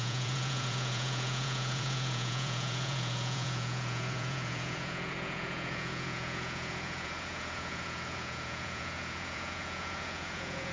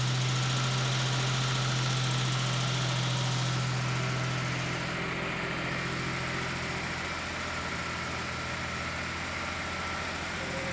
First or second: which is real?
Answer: second